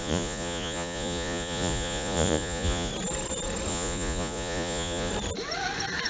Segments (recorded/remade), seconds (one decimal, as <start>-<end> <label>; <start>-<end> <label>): 0.0-2.9 remade; 2.9-3.7 recorded; 3.7-5.1 remade; 5.1-6.1 recorded